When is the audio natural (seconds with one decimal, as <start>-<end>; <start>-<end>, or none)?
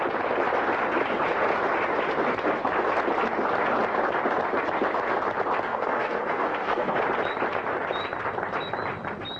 0.0-5.7; 7.0-9.4